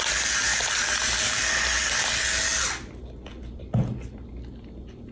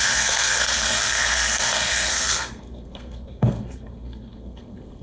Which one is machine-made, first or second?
second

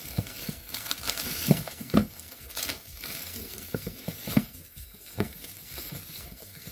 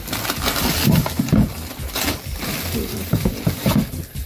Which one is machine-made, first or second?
first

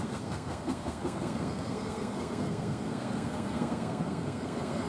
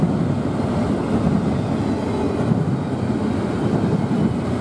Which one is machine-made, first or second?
first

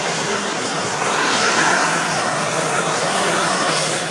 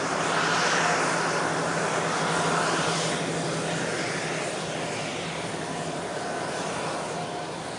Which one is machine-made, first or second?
first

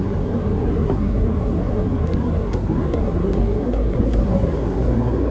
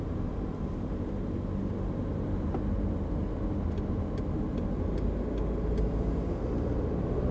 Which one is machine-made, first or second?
first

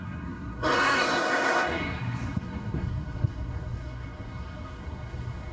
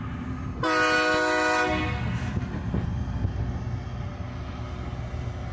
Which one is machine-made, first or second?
first